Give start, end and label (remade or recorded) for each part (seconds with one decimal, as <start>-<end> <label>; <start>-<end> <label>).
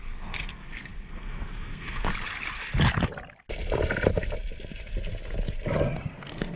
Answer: 0.0-2.1 remade; 2.1-6.1 recorded; 6.1-6.6 remade